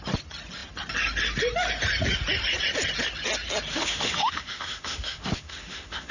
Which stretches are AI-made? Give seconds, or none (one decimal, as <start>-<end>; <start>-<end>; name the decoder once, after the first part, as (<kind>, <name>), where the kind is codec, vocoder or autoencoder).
3.7-6.1 (autoencoder, DAC-VAE)